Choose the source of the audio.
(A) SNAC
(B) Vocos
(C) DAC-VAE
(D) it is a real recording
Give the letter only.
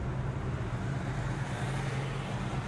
D